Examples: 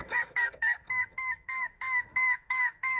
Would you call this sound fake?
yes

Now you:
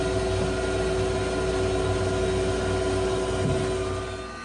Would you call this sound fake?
no